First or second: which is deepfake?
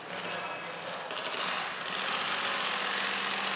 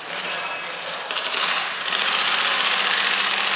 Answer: second